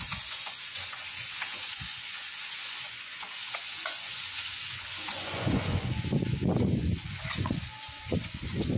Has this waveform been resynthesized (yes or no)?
yes